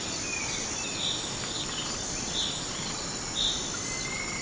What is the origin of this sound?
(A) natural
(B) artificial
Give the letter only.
A